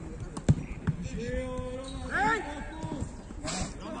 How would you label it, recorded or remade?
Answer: recorded